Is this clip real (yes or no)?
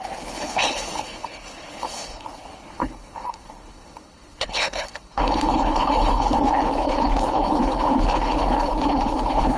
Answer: no